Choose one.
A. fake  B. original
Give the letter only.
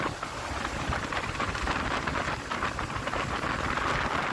B